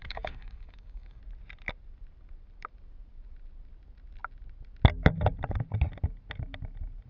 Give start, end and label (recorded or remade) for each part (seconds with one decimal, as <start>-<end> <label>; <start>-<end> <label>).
0.0-1.2 remade; 1.2-7.1 recorded